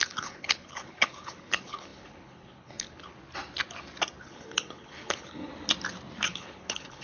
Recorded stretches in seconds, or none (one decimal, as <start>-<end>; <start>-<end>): 3.1-4.2; 5.5-6.3